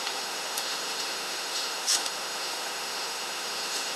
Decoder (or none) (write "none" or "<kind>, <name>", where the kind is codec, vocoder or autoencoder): autoencoder, DAC-VAE